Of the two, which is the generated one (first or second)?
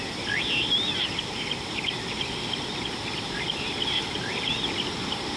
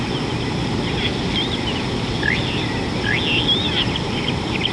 first